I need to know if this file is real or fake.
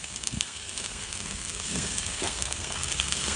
fake